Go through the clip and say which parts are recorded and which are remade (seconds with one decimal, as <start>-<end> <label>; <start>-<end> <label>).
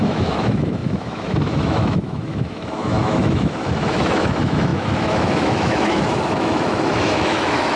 0.0-7.8 remade